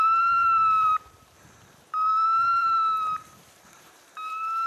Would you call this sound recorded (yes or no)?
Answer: no